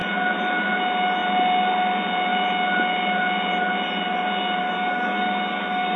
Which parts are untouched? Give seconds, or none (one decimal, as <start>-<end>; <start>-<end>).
0.0-4.6

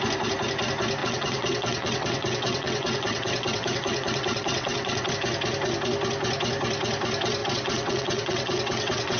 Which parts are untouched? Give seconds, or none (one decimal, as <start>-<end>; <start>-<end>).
0.0-1.0; 5.1-7.4